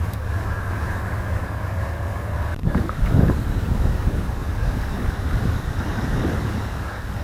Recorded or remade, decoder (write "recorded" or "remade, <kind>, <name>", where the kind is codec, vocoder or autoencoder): remade, codec, DAC